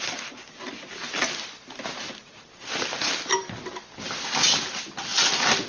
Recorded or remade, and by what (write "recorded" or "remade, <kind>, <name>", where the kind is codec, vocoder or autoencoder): recorded